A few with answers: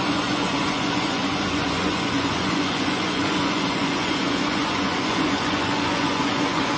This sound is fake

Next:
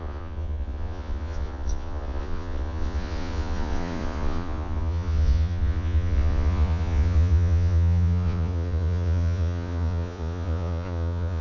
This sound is fake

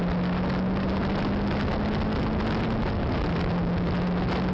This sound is real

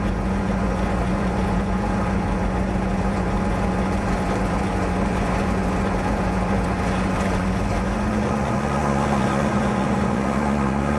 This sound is fake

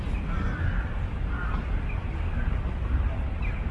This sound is real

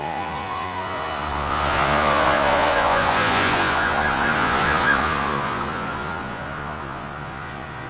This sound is fake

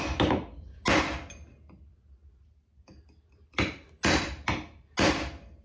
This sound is real